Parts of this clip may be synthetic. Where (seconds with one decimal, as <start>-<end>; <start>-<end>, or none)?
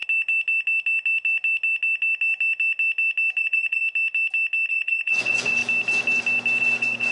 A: 3.4-3.8; 4.7-5.6; 6.6-7.1